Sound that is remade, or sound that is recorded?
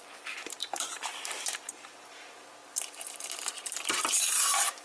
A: remade